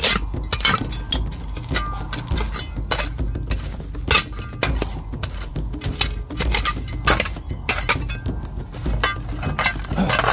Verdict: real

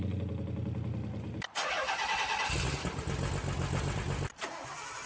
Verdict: real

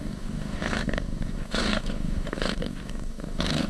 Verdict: fake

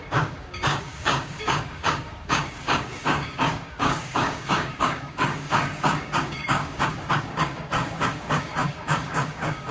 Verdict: fake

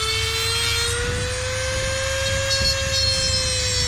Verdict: real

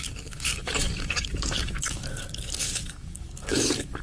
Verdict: fake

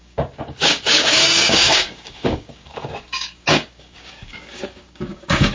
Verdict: fake